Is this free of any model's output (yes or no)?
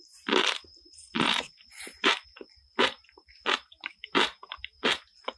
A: no